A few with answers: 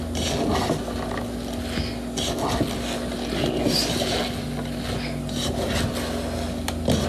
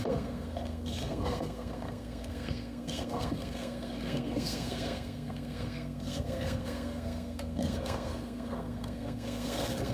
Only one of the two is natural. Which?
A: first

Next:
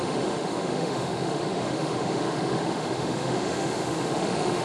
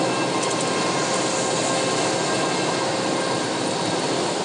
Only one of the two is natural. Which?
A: second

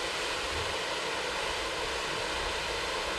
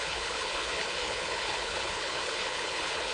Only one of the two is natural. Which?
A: first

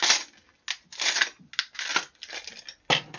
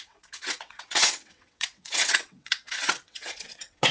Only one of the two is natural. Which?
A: first